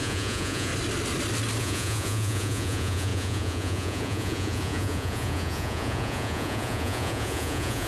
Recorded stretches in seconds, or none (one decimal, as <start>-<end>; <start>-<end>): 0.7-1.6